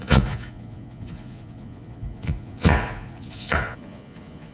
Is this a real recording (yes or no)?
no